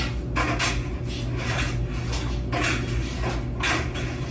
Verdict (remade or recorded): recorded